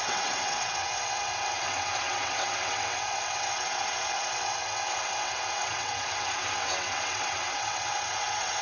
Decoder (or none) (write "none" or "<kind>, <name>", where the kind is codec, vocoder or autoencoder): vocoder, WaveNeXt